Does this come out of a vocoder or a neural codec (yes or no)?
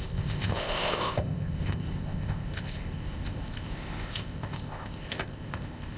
yes